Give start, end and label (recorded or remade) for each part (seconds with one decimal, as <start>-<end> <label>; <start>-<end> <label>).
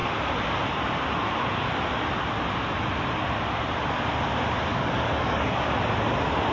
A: 0.0-4.7 recorded; 4.7-5.6 remade; 5.6-6.5 recorded